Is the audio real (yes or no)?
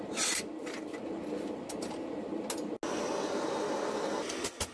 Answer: yes